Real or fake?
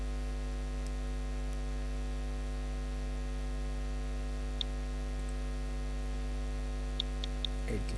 real